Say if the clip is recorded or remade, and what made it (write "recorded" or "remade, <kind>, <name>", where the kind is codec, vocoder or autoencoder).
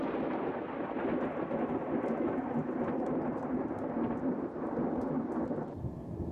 recorded